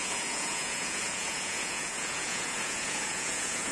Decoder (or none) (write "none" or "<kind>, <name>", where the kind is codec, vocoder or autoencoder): vocoder, Vocos